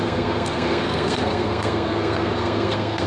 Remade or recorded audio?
remade